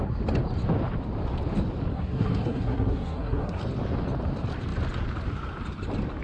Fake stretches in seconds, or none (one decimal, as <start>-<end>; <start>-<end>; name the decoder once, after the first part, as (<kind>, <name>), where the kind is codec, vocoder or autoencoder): 1.9-3.6 (codec, SNAC)